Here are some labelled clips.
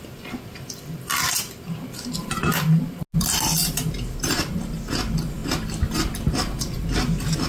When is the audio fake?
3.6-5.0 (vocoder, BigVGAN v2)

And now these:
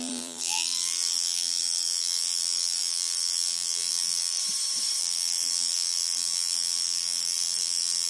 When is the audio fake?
0.0-4.4 (vocoder, BigVGAN v2); 5.0-8.1